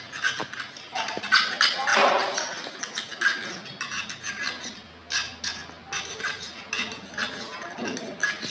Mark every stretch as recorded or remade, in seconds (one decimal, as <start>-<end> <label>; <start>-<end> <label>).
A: 0.0-8.5 recorded